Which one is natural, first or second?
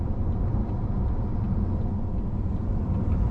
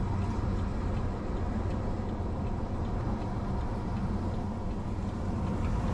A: second